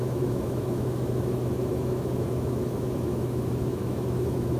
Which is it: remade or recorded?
remade